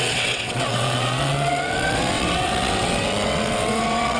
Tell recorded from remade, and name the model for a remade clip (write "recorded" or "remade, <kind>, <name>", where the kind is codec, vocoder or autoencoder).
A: remade, vocoder, WaveNeXt